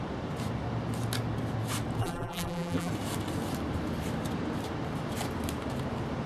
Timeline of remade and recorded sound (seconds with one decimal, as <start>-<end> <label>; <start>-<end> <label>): 0.0-2.0 recorded; 2.0-2.9 remade; 2.9-6.3 recorded